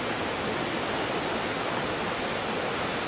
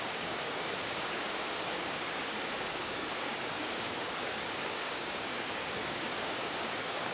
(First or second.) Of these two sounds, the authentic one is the first